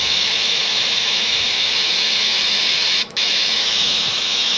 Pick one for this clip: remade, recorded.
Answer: remade